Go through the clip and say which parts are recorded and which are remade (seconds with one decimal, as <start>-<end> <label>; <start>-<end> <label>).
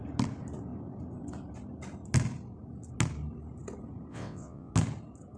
0.0-4.1 recorded; 4.1-4.7 remade; 4.7-5.4 recorded